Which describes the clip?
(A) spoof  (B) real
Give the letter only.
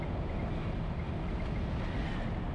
B